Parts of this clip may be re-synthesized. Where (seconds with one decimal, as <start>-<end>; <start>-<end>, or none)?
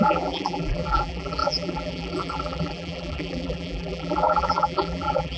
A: 0.0-5.4